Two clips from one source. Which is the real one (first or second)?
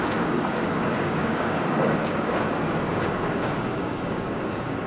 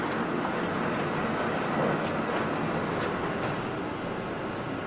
second